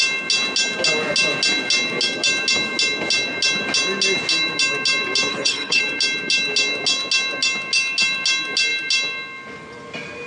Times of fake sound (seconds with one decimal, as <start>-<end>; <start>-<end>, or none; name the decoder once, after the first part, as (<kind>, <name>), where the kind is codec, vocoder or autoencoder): 5.3-5.8 (codec, HILCodec)